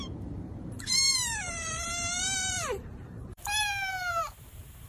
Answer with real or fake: fake